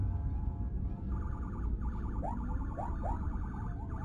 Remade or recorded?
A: recorded